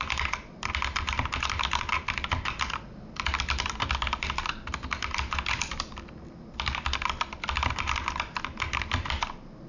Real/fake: real